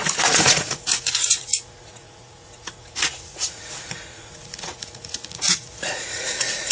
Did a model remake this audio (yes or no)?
yes